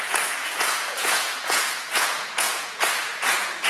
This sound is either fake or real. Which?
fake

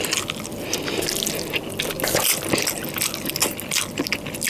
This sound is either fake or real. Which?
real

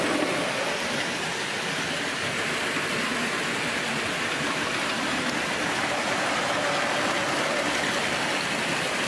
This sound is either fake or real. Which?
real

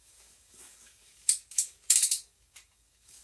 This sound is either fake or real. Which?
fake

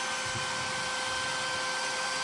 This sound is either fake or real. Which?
real